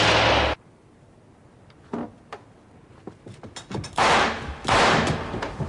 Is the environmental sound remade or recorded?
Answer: recorded